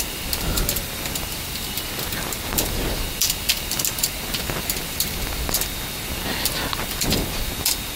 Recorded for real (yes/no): yes